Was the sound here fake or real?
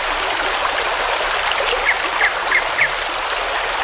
real